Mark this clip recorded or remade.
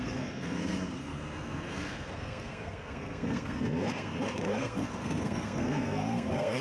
remade